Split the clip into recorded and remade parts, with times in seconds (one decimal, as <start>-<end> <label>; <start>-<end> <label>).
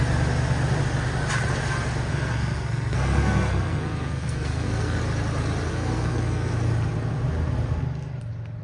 0.0-2.1 recorded; 2.1-5.0 remade; 5.0-5.7 recorded; 5.7-6.5 remade; 6.5-8.6 recorded